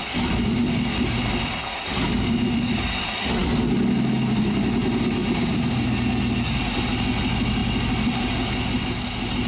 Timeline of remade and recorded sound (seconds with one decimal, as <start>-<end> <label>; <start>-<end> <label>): 0.0-9.5 recorded